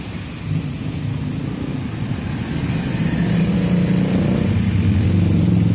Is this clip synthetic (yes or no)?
no